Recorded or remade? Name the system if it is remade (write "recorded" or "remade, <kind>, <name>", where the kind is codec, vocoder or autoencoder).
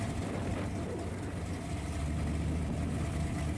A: recorded